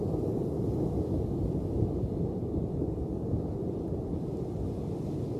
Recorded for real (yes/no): yes